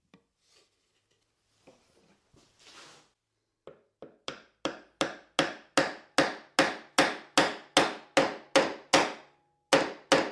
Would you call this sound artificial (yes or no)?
no